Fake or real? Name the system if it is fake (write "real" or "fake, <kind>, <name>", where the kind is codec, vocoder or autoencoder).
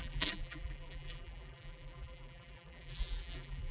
fake, vocoder, BigVGAN v2